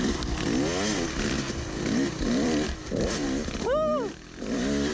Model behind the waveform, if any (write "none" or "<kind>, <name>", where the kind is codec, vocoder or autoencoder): none